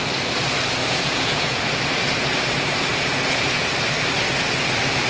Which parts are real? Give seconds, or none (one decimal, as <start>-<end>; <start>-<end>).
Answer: 0.0-0.8; 1.6-2.9; 3.7-5.1